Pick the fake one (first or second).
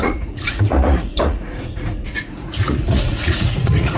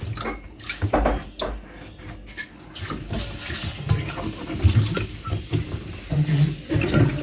first